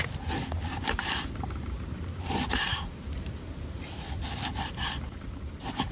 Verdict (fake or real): real